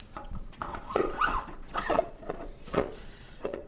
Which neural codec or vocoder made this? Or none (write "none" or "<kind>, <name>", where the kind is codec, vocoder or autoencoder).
vocoder, Vocos